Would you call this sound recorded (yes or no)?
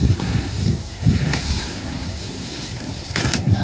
no